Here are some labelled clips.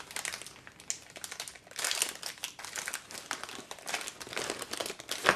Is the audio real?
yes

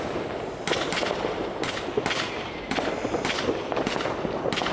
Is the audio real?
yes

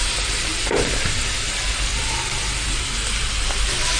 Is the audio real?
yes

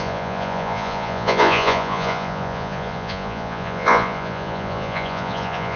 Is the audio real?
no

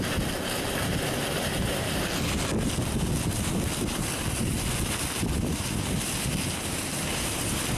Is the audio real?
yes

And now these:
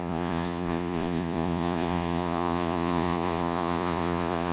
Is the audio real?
no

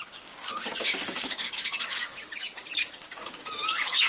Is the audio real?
no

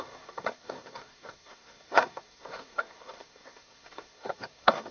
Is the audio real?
no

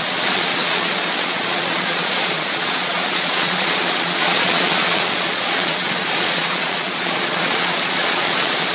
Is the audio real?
no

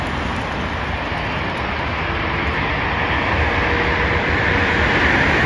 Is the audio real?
yes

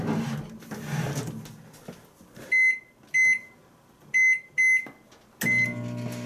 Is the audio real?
yes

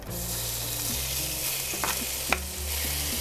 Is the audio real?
yes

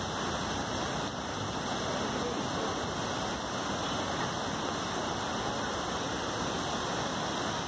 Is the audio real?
yes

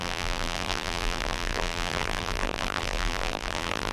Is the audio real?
no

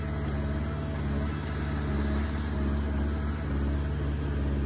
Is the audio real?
yes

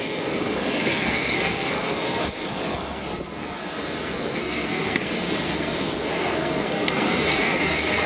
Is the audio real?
no